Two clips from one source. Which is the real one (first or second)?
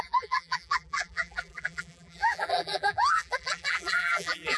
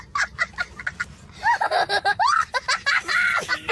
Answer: second